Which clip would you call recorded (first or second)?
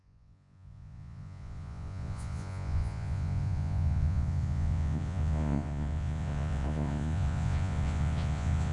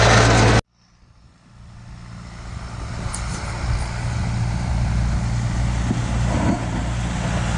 second